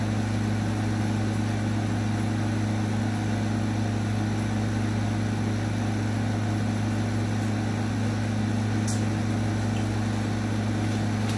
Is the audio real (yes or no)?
yes